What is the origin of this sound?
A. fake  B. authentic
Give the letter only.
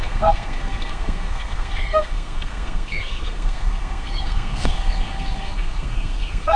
A